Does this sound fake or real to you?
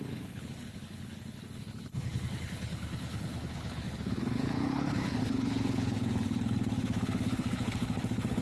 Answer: fake